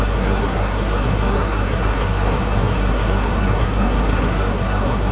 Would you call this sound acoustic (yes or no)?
no